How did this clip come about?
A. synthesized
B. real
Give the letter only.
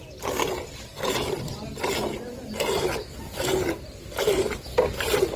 B